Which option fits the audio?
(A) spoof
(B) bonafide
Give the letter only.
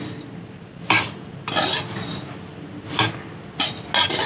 B